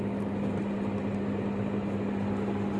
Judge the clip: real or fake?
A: real